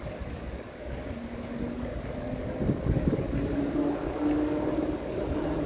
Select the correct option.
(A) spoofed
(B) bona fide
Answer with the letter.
A